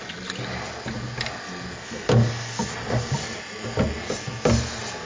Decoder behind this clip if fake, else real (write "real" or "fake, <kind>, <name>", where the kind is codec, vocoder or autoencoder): real